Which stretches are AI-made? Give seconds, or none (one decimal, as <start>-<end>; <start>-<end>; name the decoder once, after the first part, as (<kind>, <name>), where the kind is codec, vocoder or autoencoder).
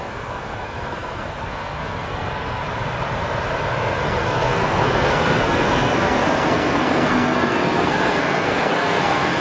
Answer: 0.0-2.6 (codec, SNAC); 3.7-9.4